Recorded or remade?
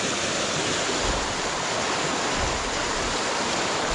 remade